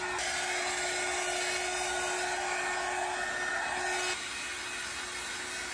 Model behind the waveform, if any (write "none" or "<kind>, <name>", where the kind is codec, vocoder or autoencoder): none